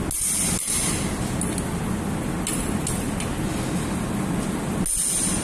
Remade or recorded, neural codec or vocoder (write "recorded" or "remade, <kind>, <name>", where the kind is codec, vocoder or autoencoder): recorded